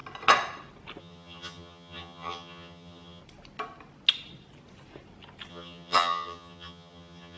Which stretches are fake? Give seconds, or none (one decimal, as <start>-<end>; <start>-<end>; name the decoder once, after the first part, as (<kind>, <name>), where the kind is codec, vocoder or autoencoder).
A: 1.0-3.2 (vocoder, HiFi-GAN); 5.5-7.4